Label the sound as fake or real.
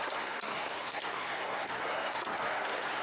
fake